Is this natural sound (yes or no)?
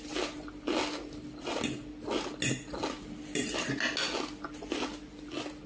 yes